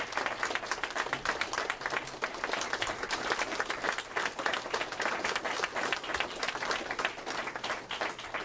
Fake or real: real